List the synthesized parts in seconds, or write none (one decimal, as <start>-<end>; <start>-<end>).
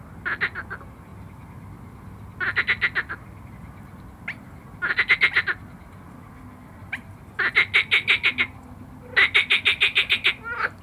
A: none